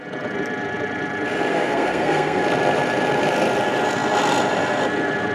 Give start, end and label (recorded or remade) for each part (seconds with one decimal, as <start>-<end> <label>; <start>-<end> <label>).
0.0-1.5 recorded; 1.5-2.4 remade; 2.4-5.3 recorded